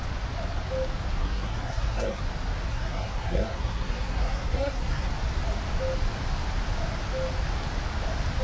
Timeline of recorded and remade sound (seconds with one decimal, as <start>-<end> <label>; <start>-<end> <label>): 0.0-1.2 recorded; 1.2-2.2 remade; 2.2-2.7 recorded; 2.7-5.1 remade; 5.1-8.4 recorded

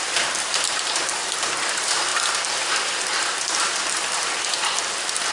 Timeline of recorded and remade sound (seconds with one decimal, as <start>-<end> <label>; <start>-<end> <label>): 0.0-5.3 recorded

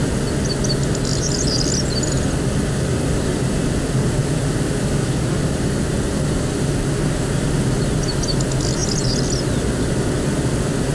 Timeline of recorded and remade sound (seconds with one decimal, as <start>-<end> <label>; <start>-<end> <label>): 0.0-10.9 recorded

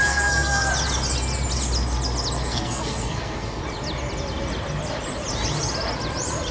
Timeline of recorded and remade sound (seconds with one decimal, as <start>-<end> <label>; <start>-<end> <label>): 0.0-0.7 remade; 0.7-2.4 recorded; 2.4-3.6 remade; 3.6-6.5 recorded

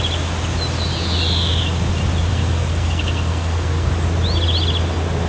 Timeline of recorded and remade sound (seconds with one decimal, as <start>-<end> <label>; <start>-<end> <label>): 0.0-2.3 recorded; 2.3-3.9 remade; 3.9-5.3 recorded

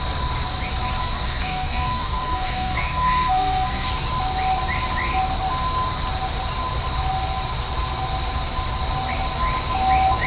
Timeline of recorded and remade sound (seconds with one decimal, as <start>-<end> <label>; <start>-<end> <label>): 0.0-1.0 recorded; 1.0-3.9 remade; 3.9-10.3 recorded

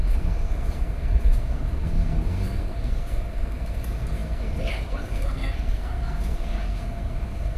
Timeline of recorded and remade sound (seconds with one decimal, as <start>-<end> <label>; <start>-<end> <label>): 0.0-7.6 remade